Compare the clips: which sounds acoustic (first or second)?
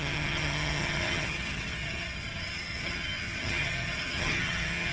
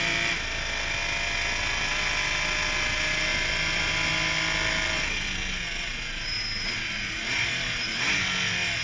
second